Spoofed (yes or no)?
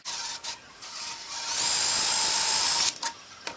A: no